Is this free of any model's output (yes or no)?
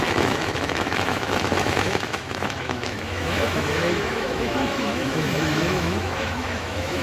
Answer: no